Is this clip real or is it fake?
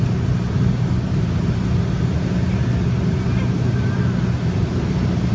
real